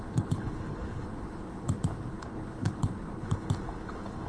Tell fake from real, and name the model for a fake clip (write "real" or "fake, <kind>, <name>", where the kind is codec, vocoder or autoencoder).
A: fake, codec, HILCodec